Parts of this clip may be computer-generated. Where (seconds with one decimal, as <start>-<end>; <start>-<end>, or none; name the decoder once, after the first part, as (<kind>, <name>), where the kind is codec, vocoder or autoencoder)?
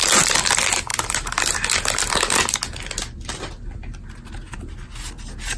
none